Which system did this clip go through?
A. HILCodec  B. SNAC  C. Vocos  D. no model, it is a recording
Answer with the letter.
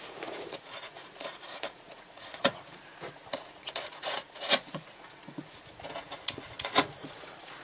C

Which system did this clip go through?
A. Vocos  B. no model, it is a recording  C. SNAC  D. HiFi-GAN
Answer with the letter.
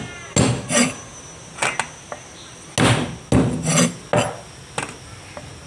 B